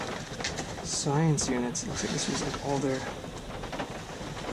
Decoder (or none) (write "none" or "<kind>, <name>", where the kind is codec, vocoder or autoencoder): none